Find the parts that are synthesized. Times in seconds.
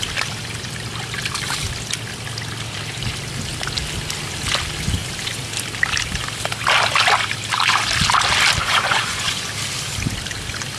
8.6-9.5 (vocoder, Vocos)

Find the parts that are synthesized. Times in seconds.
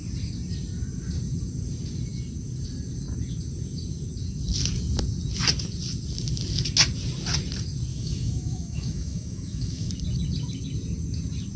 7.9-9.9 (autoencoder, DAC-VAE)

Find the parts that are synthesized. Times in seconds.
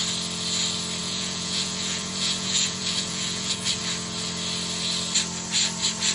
1.0-3.8 (vocoder, Vocos)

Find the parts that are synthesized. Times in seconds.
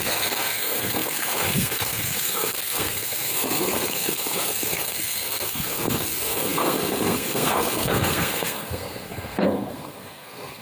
0.0-10.6 (codec, SNAC)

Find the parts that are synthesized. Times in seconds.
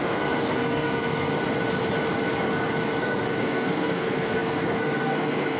0.0-1.3 (codec, SNAC); 3.0-5.6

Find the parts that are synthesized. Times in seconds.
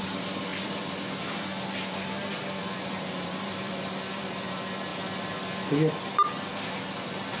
0.0-7.4 (vocoder, BigVGAN v2)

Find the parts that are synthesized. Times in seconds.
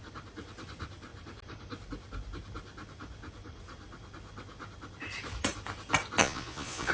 6.2-6.9 (vocoder, Vocos)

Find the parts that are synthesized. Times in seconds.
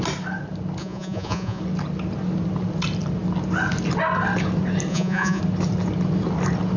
0.8-1.6 (vocoder, Vocos); 4.9-5.4